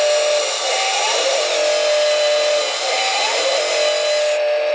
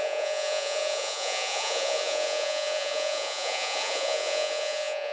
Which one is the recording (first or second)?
first